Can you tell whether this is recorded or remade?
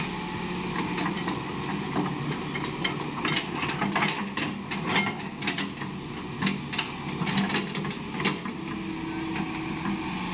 recorded